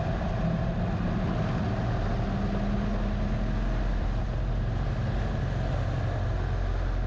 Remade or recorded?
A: recorded